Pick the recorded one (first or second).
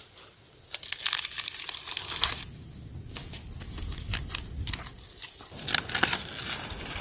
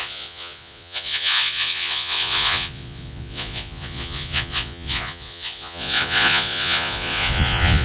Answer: first